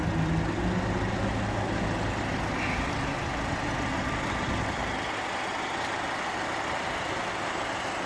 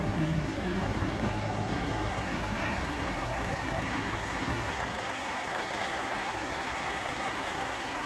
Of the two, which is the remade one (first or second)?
second